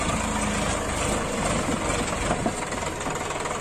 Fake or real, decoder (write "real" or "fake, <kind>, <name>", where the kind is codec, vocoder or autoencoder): real